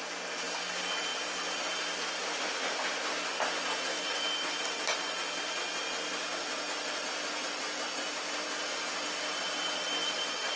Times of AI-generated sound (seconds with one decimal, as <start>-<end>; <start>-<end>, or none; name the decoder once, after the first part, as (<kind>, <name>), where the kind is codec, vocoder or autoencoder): none